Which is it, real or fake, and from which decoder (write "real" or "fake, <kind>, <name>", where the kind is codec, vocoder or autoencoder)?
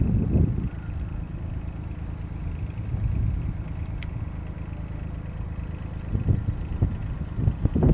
real